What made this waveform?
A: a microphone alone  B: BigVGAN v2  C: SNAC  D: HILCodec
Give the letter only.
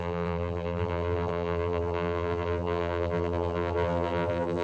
B